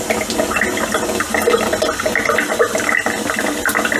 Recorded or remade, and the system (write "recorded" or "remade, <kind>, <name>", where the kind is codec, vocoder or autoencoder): recorded